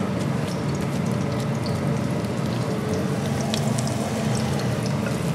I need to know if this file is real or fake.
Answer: real